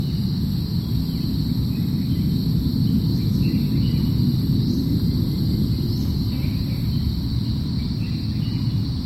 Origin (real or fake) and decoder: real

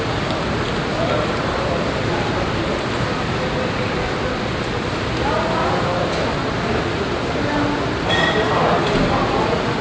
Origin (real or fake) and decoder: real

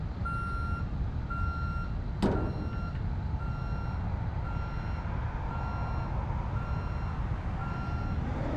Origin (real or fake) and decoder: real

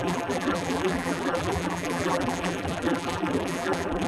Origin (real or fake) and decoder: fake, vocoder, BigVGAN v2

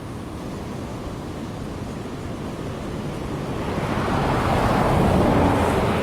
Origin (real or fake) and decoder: real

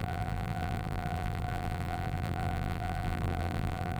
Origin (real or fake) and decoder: fake, vocoder, BigVGAN v2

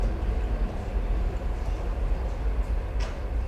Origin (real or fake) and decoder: real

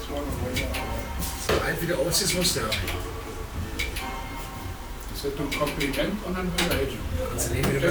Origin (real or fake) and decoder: fake, vocoder, BigVGAN v2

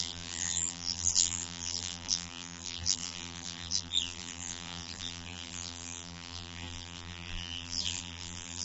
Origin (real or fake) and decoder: fake, vocoder, BigVGAN v2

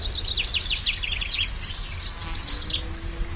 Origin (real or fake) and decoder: real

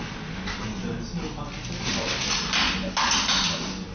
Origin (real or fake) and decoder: real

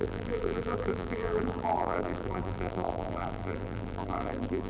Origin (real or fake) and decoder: fake, vocoder, BigVGAN v2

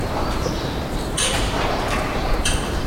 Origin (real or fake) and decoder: fake, vocoder, BigVGAN v2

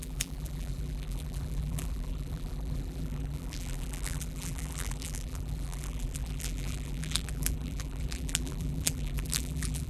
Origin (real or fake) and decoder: fake, vocoder, BigVGAN v2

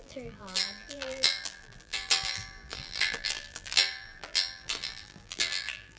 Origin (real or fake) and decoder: fake, vocoder, BigVGAN v2